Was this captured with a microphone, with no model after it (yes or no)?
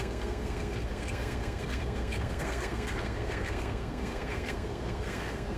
no